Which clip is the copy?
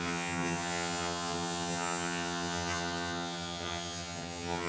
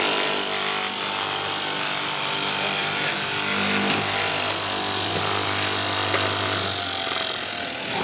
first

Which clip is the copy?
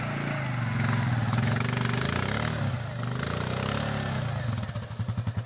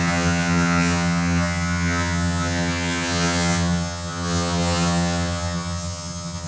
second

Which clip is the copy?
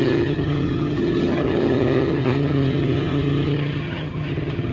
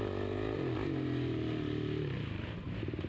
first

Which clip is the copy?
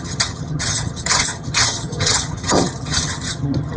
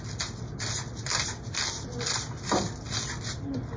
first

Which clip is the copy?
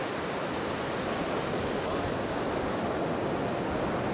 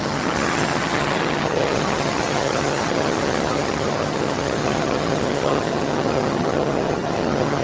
second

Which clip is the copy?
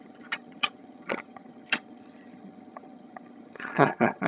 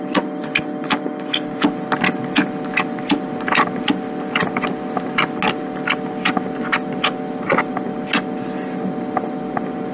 first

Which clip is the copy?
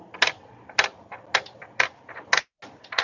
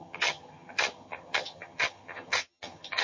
second